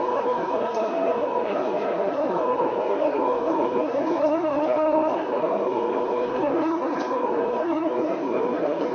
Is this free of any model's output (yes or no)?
no